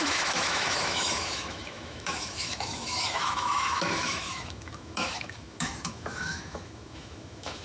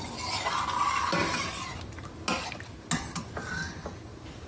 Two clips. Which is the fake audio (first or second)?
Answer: first